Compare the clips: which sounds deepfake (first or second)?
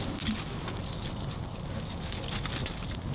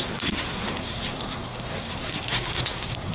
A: second